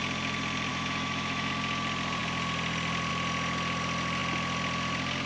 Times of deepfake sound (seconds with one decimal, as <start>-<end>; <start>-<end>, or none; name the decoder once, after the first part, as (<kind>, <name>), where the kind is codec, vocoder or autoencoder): 0.7-1.5 (autoencoder, DAC-VAE)